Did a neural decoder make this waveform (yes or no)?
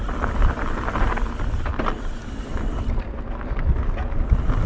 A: no